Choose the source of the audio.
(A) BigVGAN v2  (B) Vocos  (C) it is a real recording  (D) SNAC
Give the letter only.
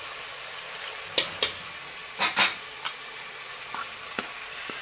C